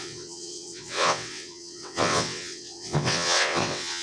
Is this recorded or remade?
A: remade